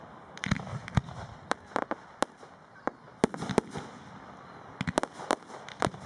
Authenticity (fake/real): real